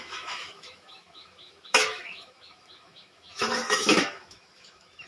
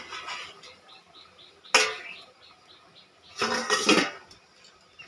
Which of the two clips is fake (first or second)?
first